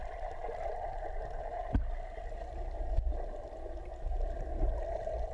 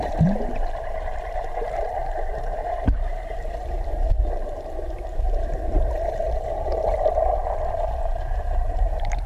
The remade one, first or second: second